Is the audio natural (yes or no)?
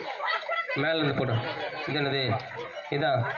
yes